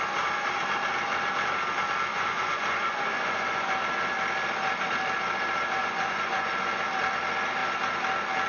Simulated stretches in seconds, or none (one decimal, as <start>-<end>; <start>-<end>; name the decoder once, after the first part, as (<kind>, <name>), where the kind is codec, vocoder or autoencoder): 2.1-3.7 (vocoder, Vocos); 5.8-6.5